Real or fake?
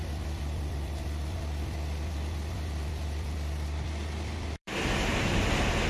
fake